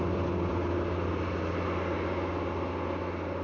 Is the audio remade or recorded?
recorded